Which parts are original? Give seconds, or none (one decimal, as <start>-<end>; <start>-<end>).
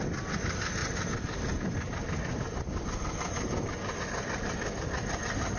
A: 0.0-5.6